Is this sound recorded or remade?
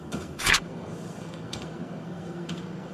remade